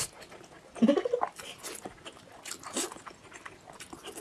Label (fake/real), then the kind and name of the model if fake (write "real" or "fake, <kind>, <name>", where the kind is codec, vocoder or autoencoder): real